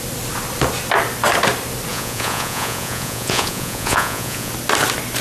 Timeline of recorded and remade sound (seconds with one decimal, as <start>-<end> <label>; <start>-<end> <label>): 0.0-1.9 recorded; 1.9-4.5 remade; 4.5-5.2 recorded